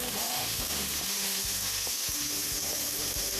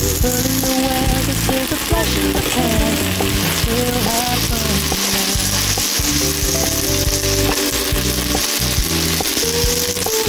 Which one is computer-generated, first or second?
first